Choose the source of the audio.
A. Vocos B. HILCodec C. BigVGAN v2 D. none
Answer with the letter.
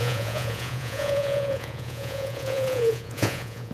A